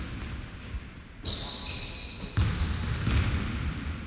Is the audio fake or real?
real